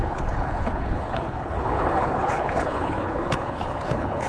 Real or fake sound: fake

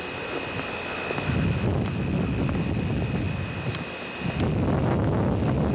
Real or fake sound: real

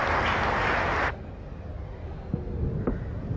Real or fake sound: real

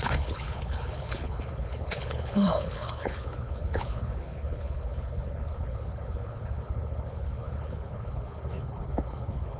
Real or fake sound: fake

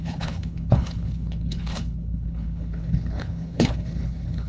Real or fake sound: fake